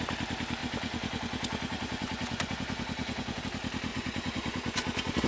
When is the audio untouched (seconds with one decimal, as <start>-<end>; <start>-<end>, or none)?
0.0-0.6; 3.4-3.9